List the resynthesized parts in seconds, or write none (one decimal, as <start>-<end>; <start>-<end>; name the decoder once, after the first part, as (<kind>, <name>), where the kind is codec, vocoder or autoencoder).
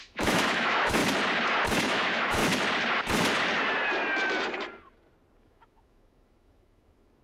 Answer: 0.0-1.0 (autoencoder, DAC-VAE); 1.8-2.4; 5.4-7.2